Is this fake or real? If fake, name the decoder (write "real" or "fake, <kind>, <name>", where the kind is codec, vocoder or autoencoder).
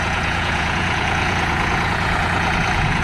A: fake, vocoder, Vocos